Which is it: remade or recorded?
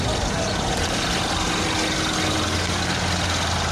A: recorded